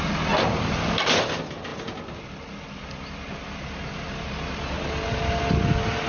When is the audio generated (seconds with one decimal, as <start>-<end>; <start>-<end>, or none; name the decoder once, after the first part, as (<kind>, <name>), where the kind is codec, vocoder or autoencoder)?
none